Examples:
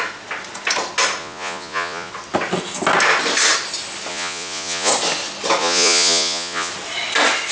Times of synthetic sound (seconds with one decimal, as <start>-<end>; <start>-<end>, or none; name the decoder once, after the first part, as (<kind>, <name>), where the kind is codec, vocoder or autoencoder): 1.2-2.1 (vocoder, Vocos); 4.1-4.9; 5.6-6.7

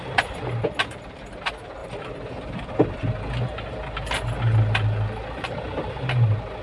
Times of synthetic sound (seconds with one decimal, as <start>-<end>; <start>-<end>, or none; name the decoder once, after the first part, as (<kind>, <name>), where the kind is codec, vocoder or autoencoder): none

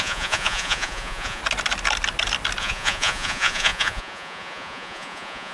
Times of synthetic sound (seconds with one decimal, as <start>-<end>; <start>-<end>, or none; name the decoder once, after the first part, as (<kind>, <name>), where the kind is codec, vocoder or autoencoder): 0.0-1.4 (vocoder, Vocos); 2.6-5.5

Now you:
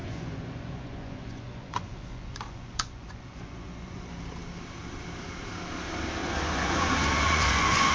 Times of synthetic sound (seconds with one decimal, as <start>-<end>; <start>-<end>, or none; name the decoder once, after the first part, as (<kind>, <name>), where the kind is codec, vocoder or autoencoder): 0.0-4.1 (vocoder, Vocos); 6.2-7.9

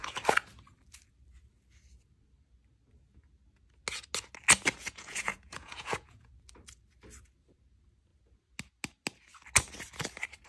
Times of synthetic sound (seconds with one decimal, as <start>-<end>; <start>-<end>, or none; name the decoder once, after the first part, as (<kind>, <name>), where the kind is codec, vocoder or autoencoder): 4.8-6.3 (vocoder, Vocos)

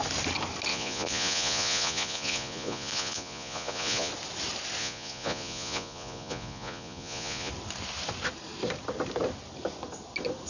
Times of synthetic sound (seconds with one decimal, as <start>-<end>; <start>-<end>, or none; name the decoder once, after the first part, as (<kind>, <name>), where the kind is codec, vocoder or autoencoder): 0.7-4.1 (vocoder, Vocos); 4.8-7.5

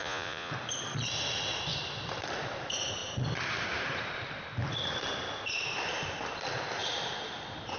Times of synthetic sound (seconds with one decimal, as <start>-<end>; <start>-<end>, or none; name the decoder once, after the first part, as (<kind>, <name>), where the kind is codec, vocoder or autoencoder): 0.0-0.5 (vocoder, Vocos)

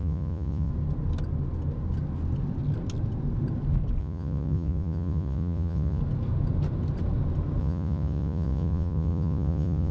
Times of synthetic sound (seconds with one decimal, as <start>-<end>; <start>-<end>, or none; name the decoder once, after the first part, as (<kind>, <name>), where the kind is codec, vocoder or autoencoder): 0.0-0.7 (vocoder, Vocos); 4.0-6.0; 7.6-9.9